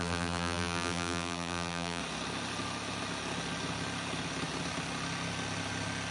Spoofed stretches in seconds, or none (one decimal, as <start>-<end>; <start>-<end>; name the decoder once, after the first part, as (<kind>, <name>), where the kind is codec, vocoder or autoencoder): 0.0-2.0 (vocoder, BigVGAN v2)